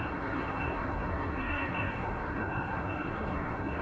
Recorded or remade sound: remade